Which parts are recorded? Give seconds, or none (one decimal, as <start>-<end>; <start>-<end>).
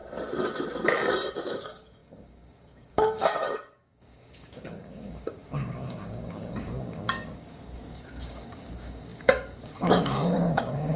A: 0.0-1.3